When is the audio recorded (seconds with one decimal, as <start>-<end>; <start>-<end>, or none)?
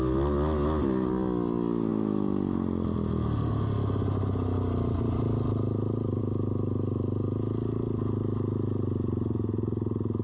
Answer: 0.0-10.2